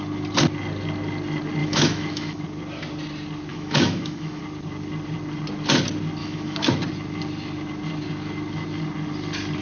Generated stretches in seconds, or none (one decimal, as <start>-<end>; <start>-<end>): 1.6-2.4; 3.5-4.4; 6.2-6.7